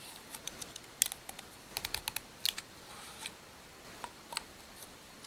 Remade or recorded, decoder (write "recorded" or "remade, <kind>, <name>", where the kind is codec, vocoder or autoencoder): recorded